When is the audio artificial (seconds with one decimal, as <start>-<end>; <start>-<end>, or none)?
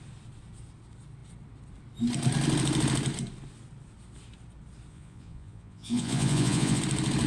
4.9-6.8